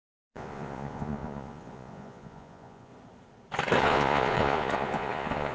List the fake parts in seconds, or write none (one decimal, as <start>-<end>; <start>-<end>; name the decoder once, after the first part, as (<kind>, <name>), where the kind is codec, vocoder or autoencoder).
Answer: 0.0-2.9 (vocoder, Vocos); 3.8-5.5